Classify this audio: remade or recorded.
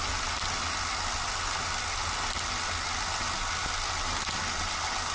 recorded